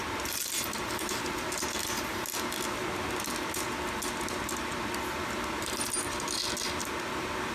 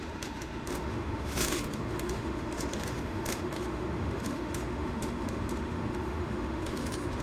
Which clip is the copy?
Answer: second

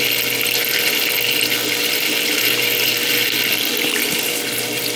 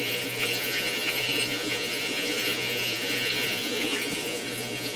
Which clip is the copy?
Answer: second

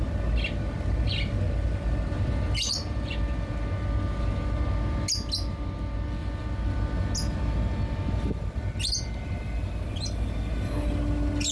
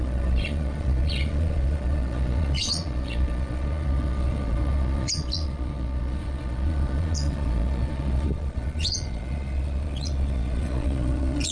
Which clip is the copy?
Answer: second